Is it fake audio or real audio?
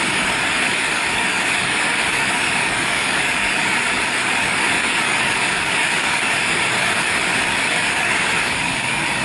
fake